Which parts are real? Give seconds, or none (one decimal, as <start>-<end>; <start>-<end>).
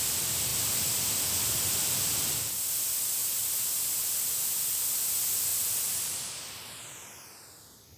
0.0-0.5; 1.1-3.2; 3.7-8.0